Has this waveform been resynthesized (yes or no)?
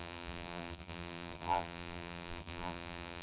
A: yes